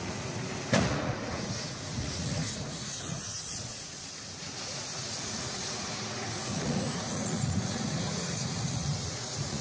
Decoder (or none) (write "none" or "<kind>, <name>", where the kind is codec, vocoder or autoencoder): vocoder, Vocos